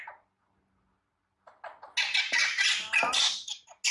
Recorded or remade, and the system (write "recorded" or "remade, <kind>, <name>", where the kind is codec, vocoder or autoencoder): recorded